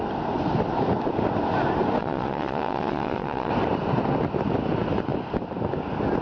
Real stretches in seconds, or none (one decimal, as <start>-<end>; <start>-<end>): 0.0-2.0; 3.5-6.2